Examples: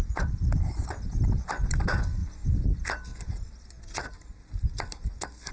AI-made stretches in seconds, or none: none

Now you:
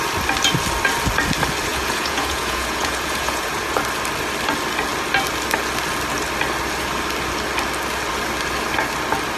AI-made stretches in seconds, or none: 1.7-3.8 (vocoder, Vocos)

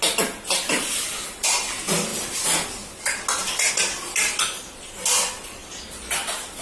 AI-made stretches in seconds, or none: none

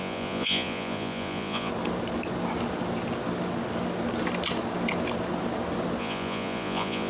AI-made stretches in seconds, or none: 0.0-1.7 (vocoder, Vocos); 6.0-7.1